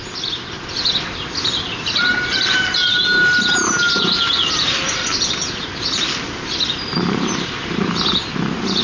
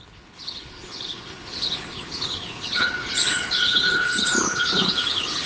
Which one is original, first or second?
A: first